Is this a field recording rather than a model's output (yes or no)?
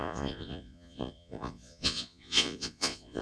no